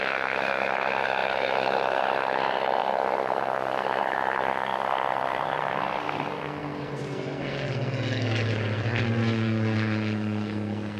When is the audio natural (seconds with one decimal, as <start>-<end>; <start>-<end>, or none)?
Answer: none